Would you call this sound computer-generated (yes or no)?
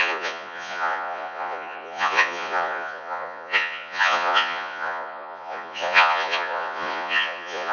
yes